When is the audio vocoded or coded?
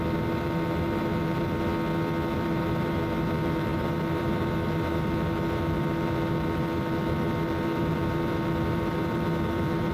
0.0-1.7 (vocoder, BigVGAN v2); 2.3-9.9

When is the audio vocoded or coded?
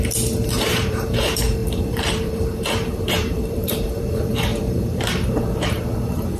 0.0-6.4 (vocoder, BigVGAN v2)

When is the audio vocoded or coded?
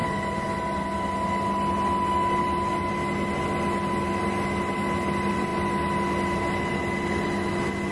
none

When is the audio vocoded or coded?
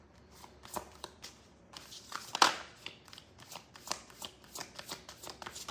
0.0-2.3 (vocoder, BigVGAN v2); 3.2-4.6